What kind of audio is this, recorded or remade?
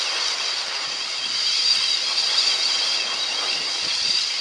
recorded